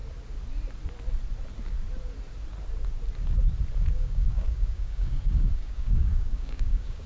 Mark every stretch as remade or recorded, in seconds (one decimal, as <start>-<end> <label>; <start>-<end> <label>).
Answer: 0.0-3.9 recorded; 3.9-7.1 remade